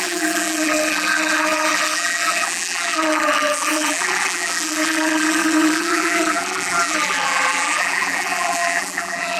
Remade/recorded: remade